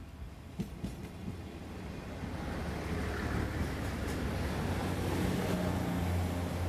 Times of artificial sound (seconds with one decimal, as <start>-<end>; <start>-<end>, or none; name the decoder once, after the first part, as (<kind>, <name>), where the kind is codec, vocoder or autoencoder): none